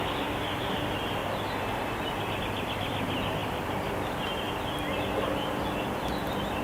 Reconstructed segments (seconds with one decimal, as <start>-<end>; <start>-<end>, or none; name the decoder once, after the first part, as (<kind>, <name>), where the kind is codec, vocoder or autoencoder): none

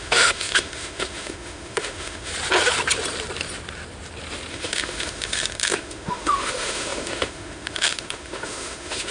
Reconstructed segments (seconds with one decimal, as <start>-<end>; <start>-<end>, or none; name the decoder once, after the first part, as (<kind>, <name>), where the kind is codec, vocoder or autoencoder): 0.0-2.3 (autoencoder, DAC-VAE); 4.5-9.1

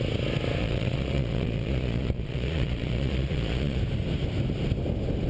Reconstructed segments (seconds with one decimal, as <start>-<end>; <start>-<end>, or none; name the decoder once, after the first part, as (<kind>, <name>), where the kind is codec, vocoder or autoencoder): 0.6-3.8 (vocoder, Vocos)

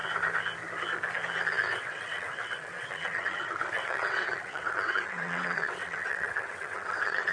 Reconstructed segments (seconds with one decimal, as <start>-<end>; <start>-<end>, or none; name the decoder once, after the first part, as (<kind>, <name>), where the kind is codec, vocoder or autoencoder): 1.7-7.3 (vocoder, WaveNeXt)

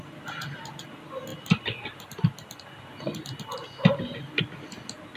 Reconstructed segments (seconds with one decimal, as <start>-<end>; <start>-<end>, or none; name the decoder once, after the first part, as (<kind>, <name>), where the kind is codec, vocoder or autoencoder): 1.3-4.4 (vocoder, BigVGAN v2)

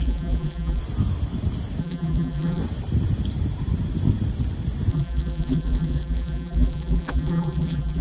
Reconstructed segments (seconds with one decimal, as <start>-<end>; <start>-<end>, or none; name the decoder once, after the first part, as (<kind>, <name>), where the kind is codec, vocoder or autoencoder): 0.0-0.8 (vocoder, BigVGAN v2); 1.8-2.6; 4.9-8.0